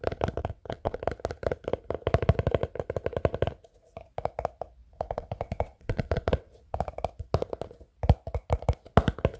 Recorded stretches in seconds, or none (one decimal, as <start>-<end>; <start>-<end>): 0.0-0.4; 1.0-4.8; 6.8-9.4